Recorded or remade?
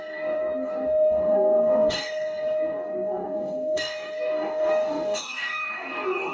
remade